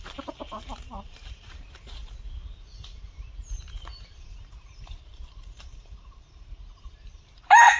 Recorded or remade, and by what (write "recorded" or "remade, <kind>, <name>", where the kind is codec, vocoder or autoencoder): remade, vocoder, BigVGAN v2